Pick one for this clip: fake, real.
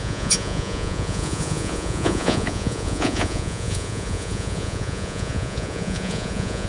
fake